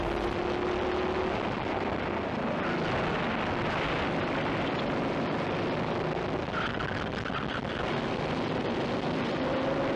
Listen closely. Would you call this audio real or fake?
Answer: real